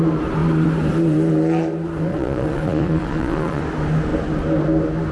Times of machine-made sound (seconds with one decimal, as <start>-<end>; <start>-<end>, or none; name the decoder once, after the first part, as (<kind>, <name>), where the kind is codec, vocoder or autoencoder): 2.1-3.6 (vocoder, Vocos)